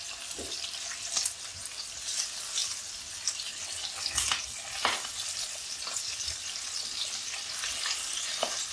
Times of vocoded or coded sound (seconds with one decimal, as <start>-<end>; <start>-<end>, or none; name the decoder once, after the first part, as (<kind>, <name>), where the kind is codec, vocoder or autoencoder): none